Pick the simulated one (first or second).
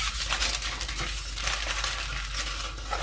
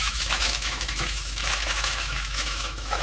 second